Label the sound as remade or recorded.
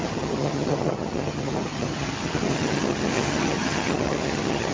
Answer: remade